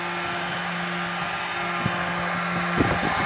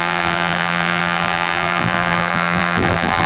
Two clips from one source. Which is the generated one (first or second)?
second